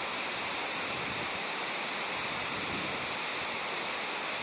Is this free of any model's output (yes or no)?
no